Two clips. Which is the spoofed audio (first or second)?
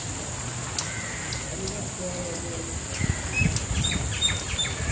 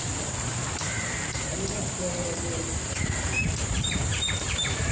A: second